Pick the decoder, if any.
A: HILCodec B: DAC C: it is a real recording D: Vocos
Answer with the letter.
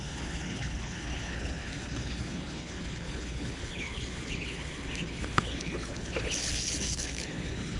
A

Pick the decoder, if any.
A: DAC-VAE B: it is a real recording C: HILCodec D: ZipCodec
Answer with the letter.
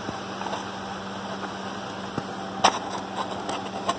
B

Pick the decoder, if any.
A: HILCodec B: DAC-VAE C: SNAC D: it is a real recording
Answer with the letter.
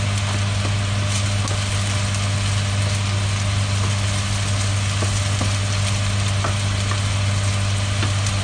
D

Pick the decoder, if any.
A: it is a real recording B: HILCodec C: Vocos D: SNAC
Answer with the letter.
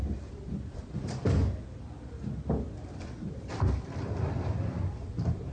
A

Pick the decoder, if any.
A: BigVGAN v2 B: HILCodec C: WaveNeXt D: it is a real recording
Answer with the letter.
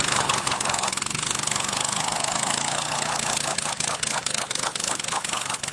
B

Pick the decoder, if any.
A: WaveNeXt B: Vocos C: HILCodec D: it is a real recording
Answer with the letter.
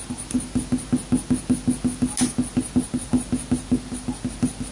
D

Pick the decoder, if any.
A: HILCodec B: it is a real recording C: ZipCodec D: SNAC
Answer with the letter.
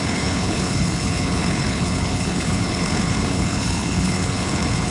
A